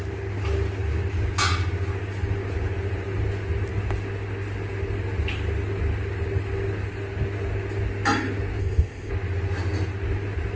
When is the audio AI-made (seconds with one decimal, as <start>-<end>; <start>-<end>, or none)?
8.6-9.1